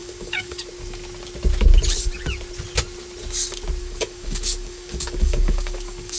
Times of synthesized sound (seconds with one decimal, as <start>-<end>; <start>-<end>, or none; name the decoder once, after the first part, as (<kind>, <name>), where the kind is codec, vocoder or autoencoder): 0.0-0.6 (codec, DAC); 3.8-6.2